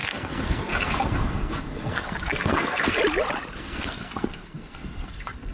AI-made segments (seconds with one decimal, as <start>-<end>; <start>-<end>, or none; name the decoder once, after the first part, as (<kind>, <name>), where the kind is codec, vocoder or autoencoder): 0.0-3.0 (codec, SNAC); 3.6-5.5